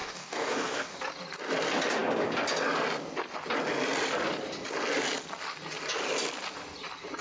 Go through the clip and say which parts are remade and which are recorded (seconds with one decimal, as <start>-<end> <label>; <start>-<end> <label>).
0.0-1.0 remade; 1.0-7.2 recorded